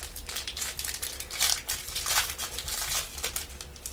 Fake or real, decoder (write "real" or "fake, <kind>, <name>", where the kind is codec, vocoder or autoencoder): real